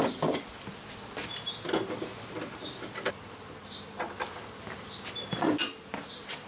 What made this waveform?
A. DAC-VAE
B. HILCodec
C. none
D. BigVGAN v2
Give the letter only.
C